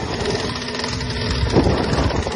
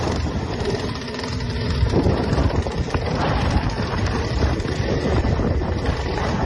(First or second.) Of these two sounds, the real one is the first